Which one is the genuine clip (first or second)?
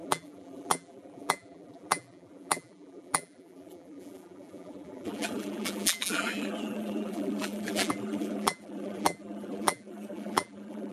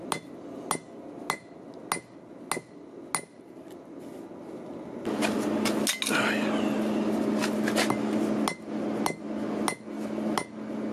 second